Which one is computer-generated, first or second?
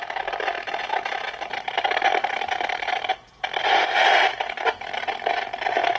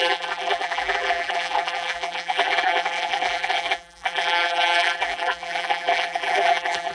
second